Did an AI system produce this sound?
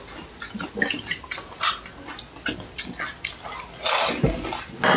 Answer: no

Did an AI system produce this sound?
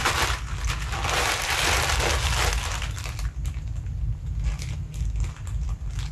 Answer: no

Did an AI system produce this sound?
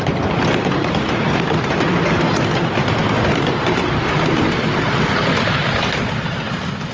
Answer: no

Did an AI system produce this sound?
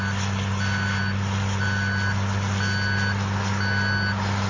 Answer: no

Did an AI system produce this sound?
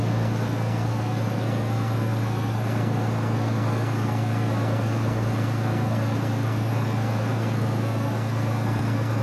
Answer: yes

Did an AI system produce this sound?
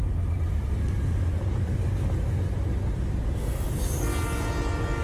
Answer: no